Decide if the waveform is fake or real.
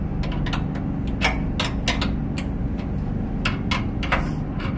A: real